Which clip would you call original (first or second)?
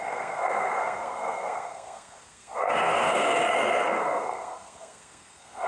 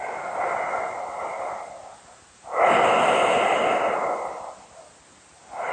second